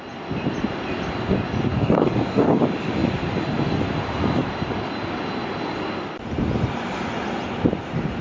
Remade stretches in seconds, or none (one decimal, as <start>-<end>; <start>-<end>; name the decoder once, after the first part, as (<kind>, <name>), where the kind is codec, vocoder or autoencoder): 1.7-2.6 (codec, DAC)